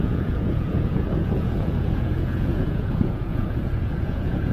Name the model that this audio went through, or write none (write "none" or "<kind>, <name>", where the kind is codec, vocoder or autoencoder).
vocoder, Vocos